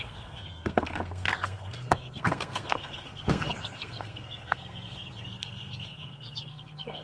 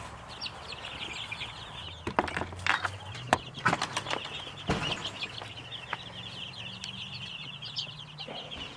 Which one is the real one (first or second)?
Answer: second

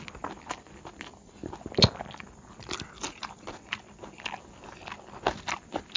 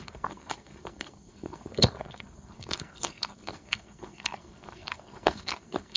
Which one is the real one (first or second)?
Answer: first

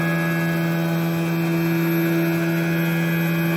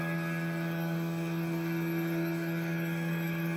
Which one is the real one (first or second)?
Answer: first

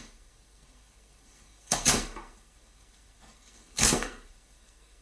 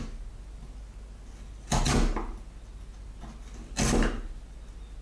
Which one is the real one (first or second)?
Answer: second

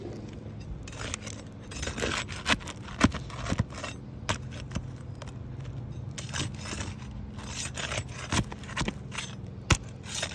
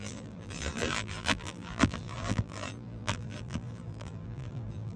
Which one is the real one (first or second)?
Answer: first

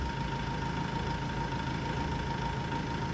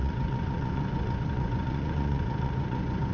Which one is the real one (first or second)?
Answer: first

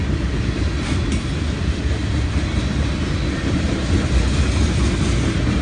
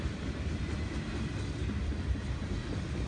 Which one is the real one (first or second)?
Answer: first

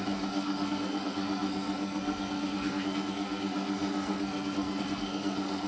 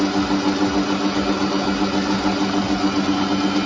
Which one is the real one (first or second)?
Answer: second